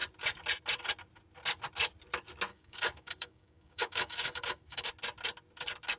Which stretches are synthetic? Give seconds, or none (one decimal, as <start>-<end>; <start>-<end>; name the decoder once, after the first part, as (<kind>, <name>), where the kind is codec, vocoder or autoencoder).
2.5-4.9 (codec, DAC)